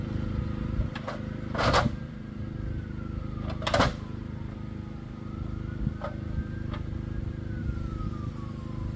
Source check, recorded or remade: recorded